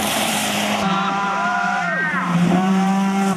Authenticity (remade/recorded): remade